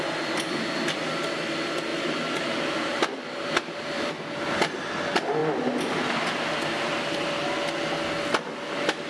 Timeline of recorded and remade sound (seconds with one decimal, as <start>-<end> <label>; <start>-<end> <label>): 0.0-1.9 recorded; 1.9-4.1 remade; 4.1-9.1 recorded